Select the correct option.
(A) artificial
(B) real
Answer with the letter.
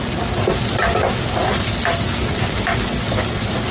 B